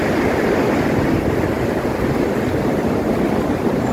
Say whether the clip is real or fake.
real